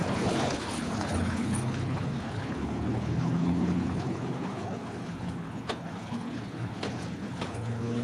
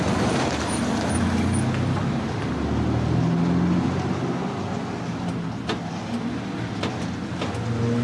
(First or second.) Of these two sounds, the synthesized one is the first